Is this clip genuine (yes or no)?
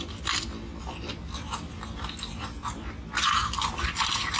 yes